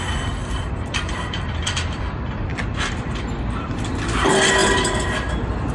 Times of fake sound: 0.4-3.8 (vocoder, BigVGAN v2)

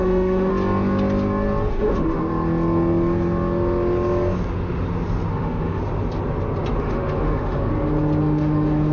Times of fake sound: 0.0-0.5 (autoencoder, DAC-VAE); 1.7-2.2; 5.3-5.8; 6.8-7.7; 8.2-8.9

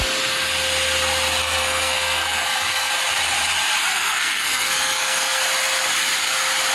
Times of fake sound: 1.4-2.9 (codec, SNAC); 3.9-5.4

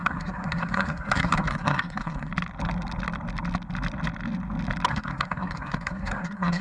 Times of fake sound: 0.0-2.3 (codec, SNAC); 4.9-6.6

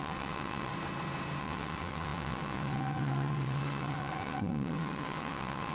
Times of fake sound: 0.0-0.7 (vocoder, WaveNeXt); 1.4-5.7

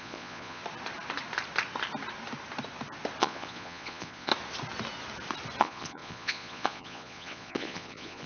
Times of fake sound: 0.0-0.6 (vocoder, Vocos); 3.2-4.3; 5.6-8.3